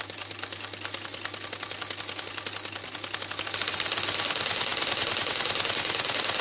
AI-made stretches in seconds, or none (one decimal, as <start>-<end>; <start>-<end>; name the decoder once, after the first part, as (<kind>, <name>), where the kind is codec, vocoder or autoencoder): none